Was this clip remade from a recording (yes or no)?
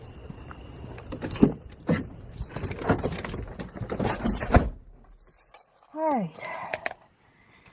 no